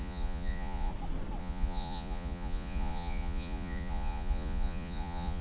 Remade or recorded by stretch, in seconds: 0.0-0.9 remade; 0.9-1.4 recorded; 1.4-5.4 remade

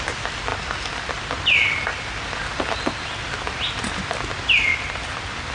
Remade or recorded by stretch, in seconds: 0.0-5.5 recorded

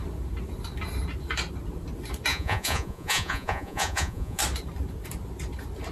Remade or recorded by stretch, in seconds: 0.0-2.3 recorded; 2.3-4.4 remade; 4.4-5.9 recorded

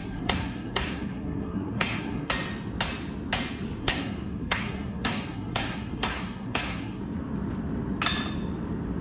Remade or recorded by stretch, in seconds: 0.0-2.3 remade; 2.3-3.8 recorded; 3.8-7.0 remade; 7.0-9.0 recorded

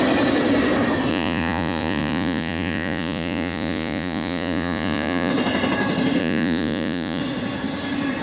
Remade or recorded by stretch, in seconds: 0.0-1.1 recorded; 1.1-5.3 remade; 5.3-6.2 recorded; 6.2-7.2 remade; 7.2-8.2 recorded